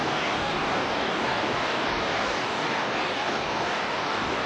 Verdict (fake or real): fake